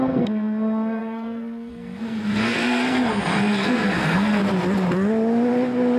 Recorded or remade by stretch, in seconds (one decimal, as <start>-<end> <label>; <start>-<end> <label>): 0.0-4.4 remade; 4.4-6.0 recorded